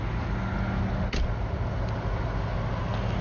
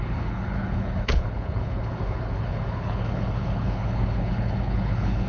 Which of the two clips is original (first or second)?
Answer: first